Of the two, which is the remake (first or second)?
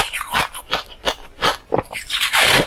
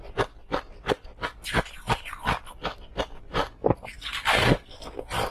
first